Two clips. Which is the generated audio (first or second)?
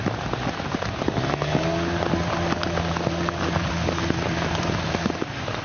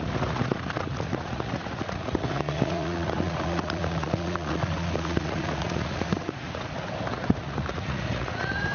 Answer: second